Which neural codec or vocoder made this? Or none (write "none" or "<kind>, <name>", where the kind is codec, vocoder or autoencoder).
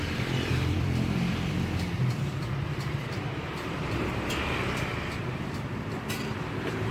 vocoder, BigVGAN v2